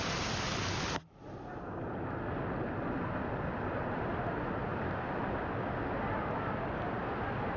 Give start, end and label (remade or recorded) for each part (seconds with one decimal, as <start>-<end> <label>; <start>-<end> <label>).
0.0-7.6 recorded